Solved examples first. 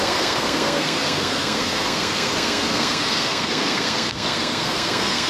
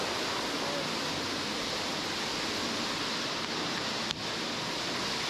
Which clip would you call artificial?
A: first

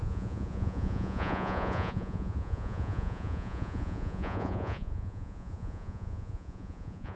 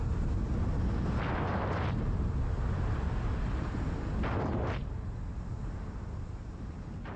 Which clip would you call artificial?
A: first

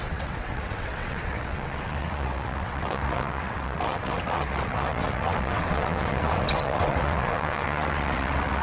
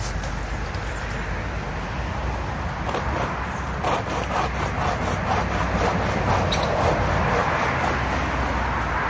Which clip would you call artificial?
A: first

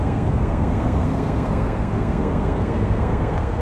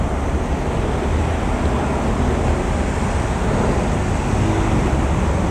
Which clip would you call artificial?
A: first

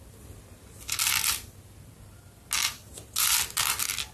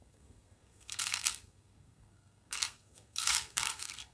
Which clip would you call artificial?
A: second